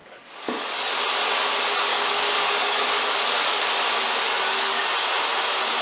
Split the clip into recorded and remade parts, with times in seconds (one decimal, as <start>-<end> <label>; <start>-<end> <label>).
0.0-0.9 remade; 0.9-1.9 recorded; 1.9-3.6 remade; 3.6-4.2 recorded; 4.2-4.9 remade; 4.9-5.8 recorded